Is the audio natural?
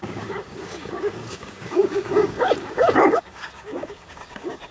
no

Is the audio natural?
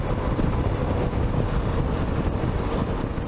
yes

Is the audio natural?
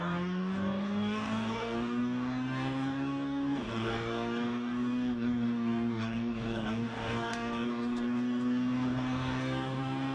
no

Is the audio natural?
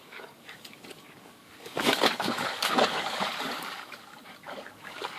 no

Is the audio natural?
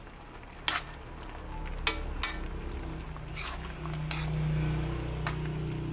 yes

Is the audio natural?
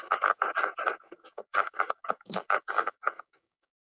no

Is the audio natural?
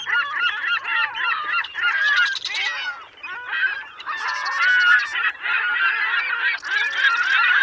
yes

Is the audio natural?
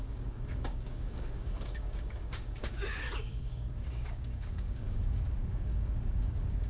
no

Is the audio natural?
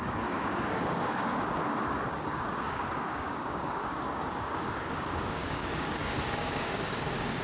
no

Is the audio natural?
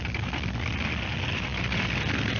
yes